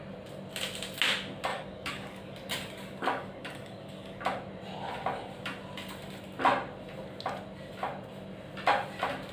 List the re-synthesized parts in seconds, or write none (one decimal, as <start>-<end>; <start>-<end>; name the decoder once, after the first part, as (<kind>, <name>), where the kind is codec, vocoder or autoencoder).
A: 1.5-4.2 (codec, DAC)